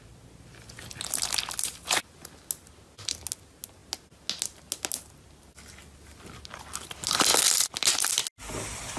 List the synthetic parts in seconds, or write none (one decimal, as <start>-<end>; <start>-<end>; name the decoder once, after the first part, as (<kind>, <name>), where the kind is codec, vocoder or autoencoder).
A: none